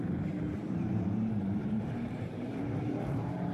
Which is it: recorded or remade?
remade